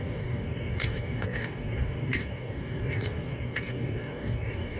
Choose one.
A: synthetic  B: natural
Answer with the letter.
A